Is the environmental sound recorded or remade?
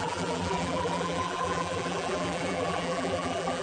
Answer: remade